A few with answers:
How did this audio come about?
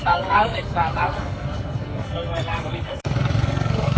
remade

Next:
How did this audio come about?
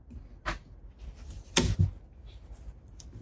recorded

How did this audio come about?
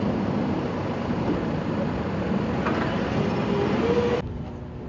recorded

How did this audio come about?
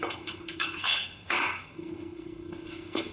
remade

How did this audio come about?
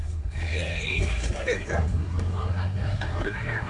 remade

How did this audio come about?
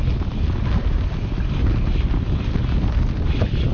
recorded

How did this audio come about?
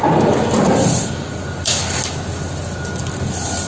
recorded